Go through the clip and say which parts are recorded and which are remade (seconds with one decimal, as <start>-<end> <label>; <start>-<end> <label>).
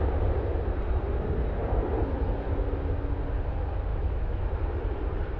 0.0-3.9 recorded; 3.9-4.4 remade; 4.4-5.4 recorded